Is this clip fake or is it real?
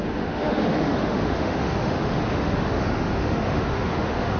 fake